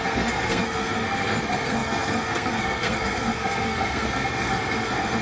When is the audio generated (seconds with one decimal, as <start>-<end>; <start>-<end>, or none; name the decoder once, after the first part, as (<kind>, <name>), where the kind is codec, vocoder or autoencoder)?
0.0-5.2 (codec, SNAC)